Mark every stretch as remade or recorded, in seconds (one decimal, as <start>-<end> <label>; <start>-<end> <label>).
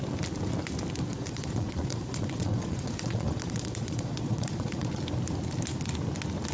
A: 0.0-1.1 recorded; 1.1-5.0 remade; 5.0-6.5 recorded